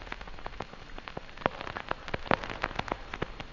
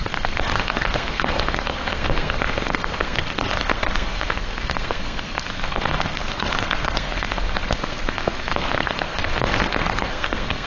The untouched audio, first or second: first